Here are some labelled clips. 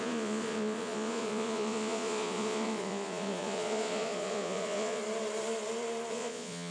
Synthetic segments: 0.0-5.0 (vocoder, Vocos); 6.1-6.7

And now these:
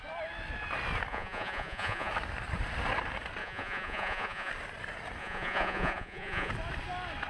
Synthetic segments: 1.1-2.1 (vocoder, Vocos); 3.4-4.5; 5.2-6.5

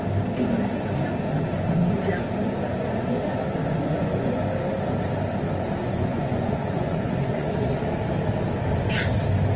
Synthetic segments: 3.6-4.5 (vocoder, Vocos); 5.8-7.6

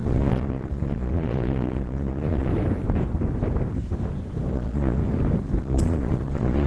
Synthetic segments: 0.0-2.5 (vocoder, Vocos); 4.5-5.0; 5.6-6.7

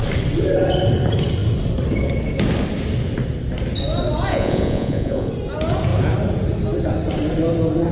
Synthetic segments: 4.3-5.3 (vocoder, Vocos)